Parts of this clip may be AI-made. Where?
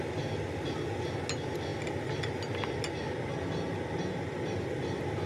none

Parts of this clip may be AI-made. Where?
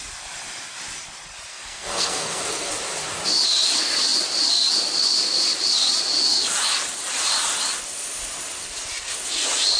1.5-2.7 (codec, SNAC)